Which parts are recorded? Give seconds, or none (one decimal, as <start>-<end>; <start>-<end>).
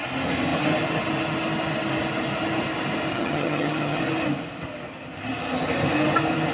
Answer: 0.0-3.1; 4.0-6.5